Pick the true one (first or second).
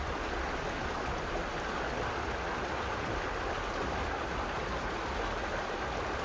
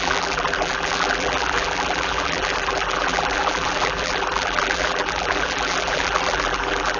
first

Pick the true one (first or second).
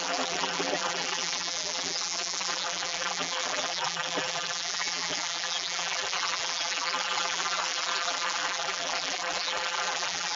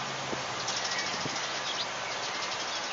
second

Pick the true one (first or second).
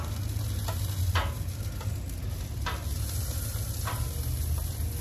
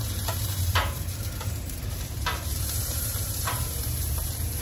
first